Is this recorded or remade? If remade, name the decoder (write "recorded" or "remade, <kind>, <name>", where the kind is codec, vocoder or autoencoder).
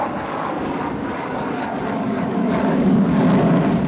remade, codec, DAC